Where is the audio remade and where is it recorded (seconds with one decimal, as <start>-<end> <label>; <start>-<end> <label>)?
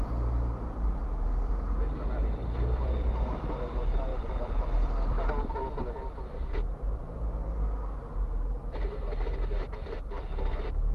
0.0-4.1 recorded; 4.1-5.3 remade; 5.3-10.9 recorded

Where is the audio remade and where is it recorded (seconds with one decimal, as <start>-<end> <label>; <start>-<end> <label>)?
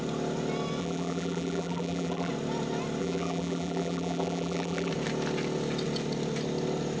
0.0-0.8 recorded; 0.8-2.3 remade; 2.3-3.0 recorded; 3.0-4.9 remade; 4.9-7.0 recorded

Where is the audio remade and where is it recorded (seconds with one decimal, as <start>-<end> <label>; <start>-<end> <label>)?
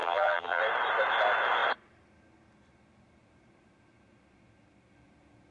0.0-0.6 remade; 0.6-5.5 recorded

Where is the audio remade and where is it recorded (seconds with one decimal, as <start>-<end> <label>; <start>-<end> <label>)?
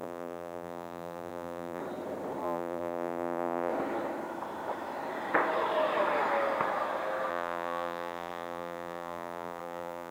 0.0-1.8 remade; 1.8-2.4 recorded; 2.4-3.7 remade; 3.7-7.3 recorded; 7.3-10.1 remade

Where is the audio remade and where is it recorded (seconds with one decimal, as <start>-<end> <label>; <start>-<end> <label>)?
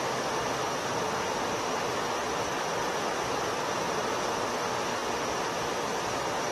0.0-2.2 remade; 2.2-2.9 recorded; 2.9-3.5 remade; 3.5-4.6 recorded; 4.6-5.0 remade; 5.0-5.9 recorded; 5.9-6.5 remade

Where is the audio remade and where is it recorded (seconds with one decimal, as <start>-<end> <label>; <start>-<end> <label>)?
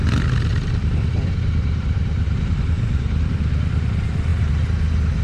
0.0-0.5 recorded; 0.5-3.3 remade; 3.3-5.2 recorded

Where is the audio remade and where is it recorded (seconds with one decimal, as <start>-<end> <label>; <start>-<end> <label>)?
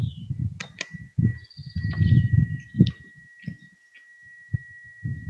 0.0-0.5 remade; 0.5-5.3 recorded